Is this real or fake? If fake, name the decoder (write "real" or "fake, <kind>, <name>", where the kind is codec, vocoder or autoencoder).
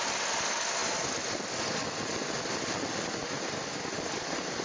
real